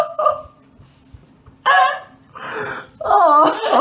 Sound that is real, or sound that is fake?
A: real